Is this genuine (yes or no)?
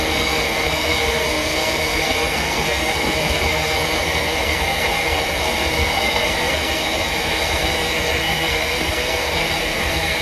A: no